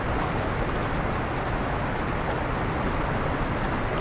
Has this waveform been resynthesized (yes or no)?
no